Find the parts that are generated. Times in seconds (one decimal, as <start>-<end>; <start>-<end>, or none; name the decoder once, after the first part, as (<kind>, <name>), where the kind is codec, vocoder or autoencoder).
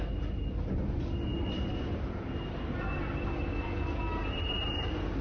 4.2-5.2 (vocoder, BigVGAN v2)